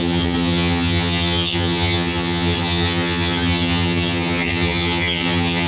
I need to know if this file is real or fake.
fake